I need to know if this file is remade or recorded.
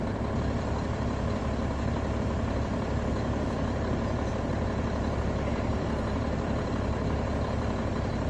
remade